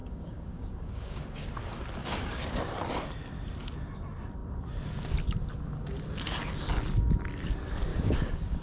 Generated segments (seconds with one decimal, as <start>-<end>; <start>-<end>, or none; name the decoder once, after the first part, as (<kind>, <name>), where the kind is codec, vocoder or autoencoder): 0.0-1.5 (codec, DAC); 2.0-2.6; 7.9-8.6